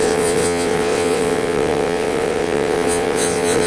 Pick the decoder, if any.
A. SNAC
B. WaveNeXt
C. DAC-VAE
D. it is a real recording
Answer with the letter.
B